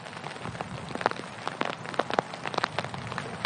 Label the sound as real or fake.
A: real